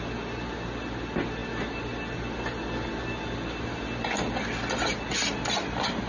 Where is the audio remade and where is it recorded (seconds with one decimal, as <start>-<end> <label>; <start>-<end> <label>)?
0.0-6.1 recorded